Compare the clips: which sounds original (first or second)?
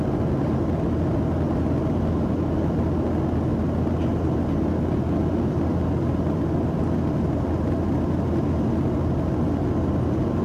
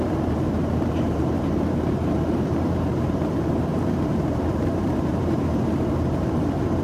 first